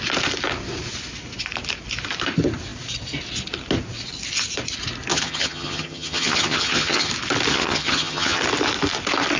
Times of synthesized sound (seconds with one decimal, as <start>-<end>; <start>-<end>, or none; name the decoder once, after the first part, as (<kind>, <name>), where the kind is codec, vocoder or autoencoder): 5.1-7.1 (vocoder, HiFi-GAN); 7.5-8.4